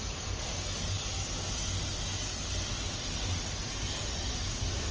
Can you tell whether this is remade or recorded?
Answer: recorded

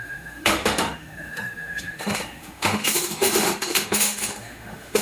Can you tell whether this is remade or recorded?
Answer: remade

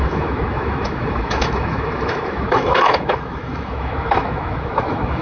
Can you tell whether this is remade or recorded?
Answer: remade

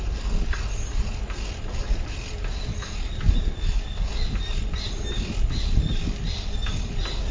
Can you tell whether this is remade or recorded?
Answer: recorded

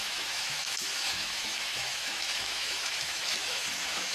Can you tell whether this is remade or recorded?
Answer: remade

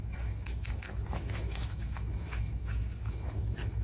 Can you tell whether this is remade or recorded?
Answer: remade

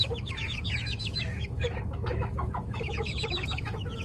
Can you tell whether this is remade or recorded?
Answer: remade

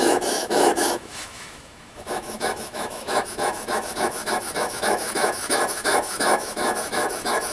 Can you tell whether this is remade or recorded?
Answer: remade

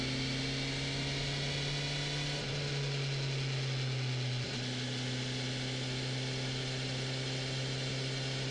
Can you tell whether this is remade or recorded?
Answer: recorded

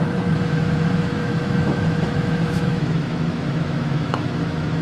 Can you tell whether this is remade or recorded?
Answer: remade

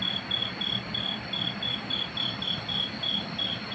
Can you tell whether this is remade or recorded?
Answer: recorded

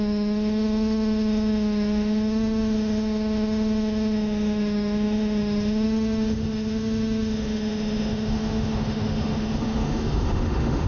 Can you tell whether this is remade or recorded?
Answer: remade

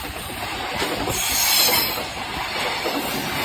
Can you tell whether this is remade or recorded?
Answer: recorded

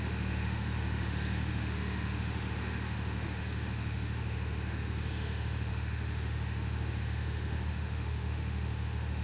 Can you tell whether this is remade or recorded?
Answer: remade